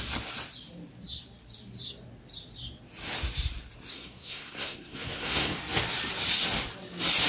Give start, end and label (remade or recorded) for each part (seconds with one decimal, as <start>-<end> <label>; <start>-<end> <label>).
0.0-3.9 recorded; 3.9-5.6 remade; 5.6-7.3 recorded